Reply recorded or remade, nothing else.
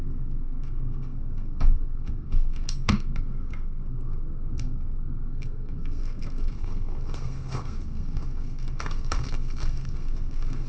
remade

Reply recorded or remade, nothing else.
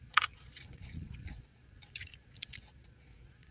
remade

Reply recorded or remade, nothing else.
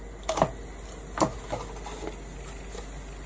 recorded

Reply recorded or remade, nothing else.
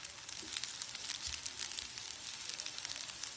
recorded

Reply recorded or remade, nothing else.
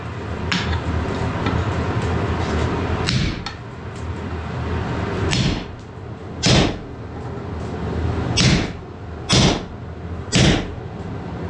recorded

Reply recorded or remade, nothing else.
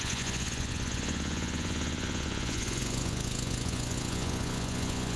remade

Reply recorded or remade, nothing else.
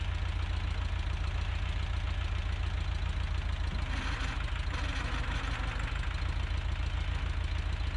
recorded